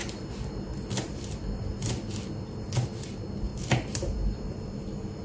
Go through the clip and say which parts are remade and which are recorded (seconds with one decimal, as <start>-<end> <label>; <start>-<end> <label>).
0.0-5.2 recorded